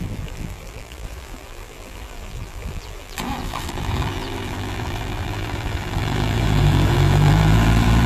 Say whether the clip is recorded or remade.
remade